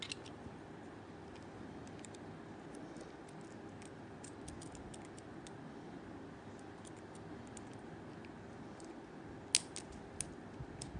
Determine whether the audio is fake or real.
real